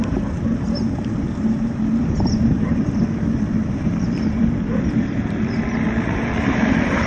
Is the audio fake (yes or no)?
yes